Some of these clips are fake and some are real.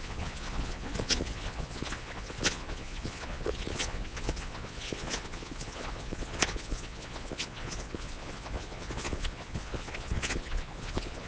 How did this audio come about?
fake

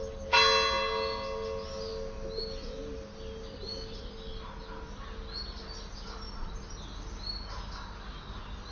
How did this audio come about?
real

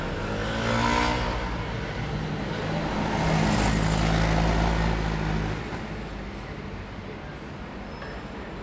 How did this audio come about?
real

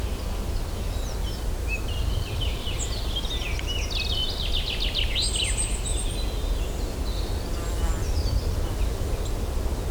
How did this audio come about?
real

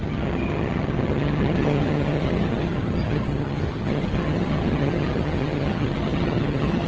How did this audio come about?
fake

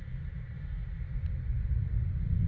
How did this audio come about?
real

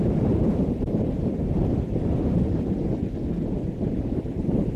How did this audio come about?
fake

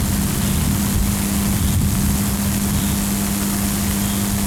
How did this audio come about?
real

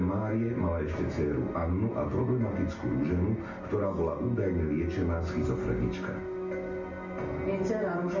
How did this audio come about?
real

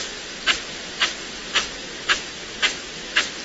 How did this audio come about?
real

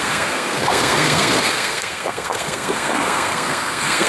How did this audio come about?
fake